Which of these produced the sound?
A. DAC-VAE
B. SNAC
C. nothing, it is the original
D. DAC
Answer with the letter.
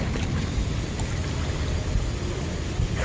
C